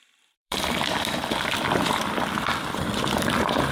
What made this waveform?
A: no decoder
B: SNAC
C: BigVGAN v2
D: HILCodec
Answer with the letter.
C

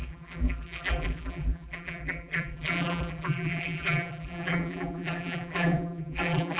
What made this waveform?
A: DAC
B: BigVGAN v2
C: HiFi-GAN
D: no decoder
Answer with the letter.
B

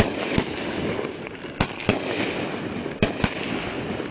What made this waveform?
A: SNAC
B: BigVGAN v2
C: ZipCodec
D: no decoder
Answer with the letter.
D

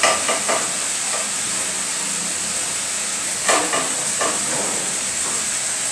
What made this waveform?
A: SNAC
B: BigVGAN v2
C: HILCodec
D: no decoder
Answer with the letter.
D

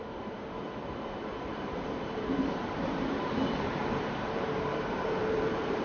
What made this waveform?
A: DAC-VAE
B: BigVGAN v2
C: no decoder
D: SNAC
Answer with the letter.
B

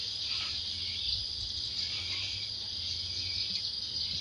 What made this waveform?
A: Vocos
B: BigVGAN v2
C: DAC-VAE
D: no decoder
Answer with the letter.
B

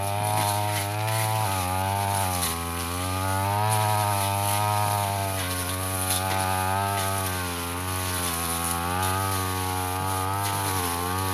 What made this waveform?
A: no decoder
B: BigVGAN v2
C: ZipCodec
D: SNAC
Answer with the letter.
A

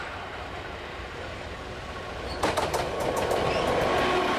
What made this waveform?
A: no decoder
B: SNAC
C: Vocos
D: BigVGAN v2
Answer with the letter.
A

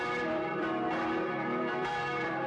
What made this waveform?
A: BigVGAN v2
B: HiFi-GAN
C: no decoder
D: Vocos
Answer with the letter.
A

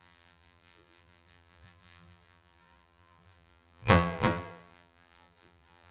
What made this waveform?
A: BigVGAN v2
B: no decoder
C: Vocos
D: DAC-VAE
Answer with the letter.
A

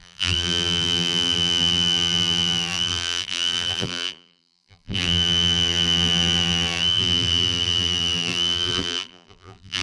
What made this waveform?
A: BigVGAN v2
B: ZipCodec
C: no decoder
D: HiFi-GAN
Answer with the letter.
A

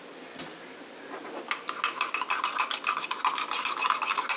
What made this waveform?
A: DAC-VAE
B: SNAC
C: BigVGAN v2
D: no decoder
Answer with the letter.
D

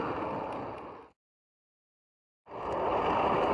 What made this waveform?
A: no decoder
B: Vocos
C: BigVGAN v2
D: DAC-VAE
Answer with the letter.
A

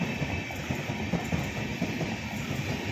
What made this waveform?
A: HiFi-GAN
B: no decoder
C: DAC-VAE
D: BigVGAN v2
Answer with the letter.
B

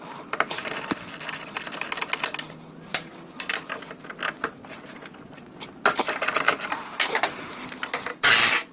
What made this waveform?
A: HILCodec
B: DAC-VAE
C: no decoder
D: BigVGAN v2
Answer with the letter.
C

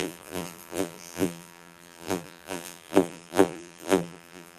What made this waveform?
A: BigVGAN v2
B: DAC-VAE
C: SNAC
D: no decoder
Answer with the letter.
A